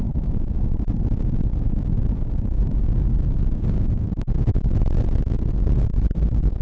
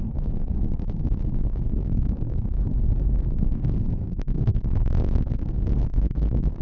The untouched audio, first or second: first